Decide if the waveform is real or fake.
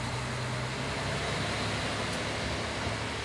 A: real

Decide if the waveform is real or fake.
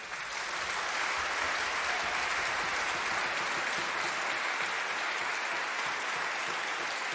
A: real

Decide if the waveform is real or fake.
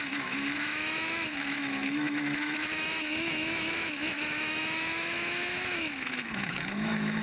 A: fake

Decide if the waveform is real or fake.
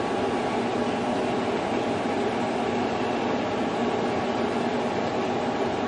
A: real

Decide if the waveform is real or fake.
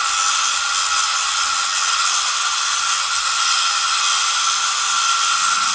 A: real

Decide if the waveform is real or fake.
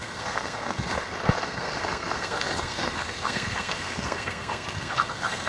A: fake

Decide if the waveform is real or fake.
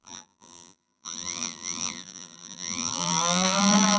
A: fake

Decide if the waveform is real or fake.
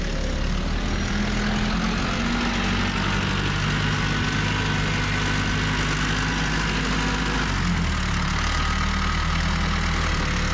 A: real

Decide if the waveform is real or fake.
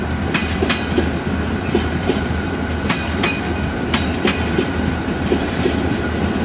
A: real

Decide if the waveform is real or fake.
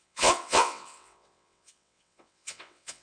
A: fake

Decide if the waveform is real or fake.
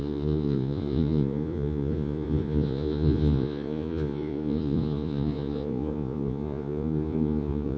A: fake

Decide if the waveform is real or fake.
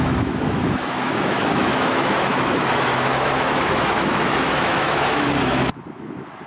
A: fake